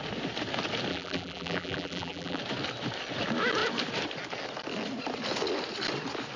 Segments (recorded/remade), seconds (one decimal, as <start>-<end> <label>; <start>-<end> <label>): 0.0-0.9 recorded; 0.9-2.4 remade; 2.4-6.4 recorded